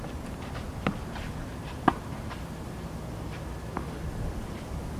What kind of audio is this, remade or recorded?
recorded